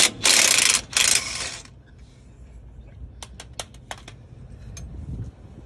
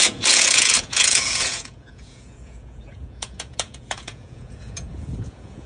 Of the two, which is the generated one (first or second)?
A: second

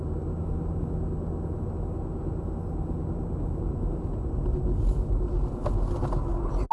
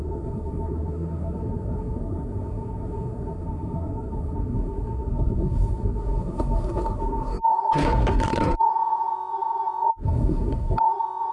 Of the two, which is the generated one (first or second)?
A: second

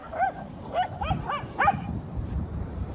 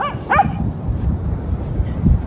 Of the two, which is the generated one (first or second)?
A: first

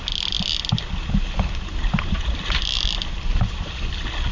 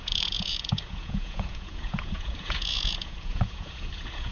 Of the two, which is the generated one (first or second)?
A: second